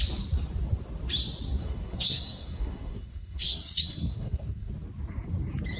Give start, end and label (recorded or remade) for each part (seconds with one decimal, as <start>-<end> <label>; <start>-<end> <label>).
0.0-1.6 recorded; 1.6-4.7 remade; 4.7-5.8 recorded